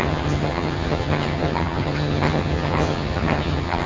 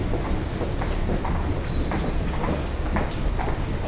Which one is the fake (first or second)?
first